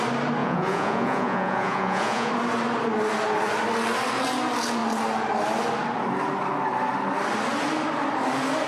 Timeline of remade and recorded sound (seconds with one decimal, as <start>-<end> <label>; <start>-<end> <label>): 0.0-0.4 recorded; 0.4-2.3 remade; 2.3-8.7 recorded